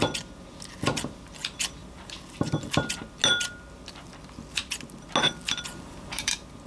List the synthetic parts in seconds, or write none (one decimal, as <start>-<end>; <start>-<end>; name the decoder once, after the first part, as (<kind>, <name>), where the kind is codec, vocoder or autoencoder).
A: 1.8-2.6 (vocoder, BigVGAN v2); 5.7-6.3